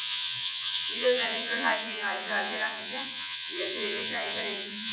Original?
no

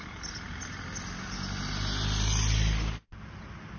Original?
yes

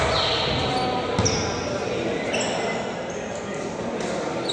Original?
yes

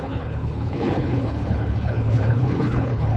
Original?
no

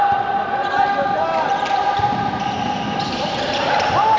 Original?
no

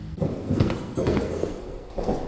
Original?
no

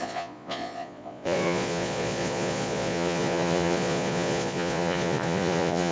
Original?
no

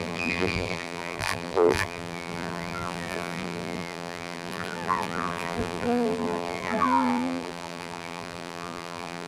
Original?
no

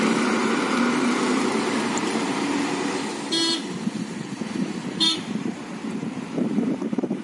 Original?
no